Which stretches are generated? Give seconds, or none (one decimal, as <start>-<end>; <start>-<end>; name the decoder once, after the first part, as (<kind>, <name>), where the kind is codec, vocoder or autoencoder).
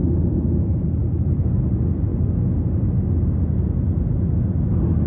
none